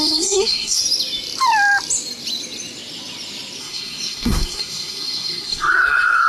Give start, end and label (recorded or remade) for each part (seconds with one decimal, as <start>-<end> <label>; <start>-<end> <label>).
0.0-0.8 remade; 0.8-3.6 recorded; 3.6-6.3 remade